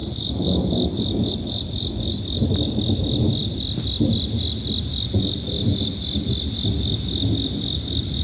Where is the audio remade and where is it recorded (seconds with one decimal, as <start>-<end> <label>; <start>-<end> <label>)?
0.0-1.3 remade; 1.3-3.4 recorded; 3.4-6.5 remade; 6.5-8.2 recorded

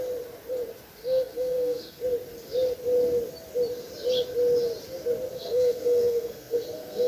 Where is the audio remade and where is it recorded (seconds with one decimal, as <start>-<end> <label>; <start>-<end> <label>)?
0.0-1.0 recorded; 1.0-2.0 remade; 2.0-5.3 recorded; 5.3-7.1 remade